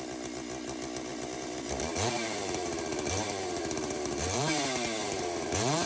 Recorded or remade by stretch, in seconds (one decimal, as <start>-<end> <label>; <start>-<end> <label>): 0.0-1.1 recorded; 1.1-4.6 remade; 4.6-5.0 recorded; 5.0-5.9 remade